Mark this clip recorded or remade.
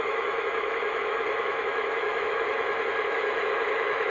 remade